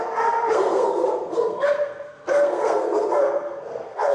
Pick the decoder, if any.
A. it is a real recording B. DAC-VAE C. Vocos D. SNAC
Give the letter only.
D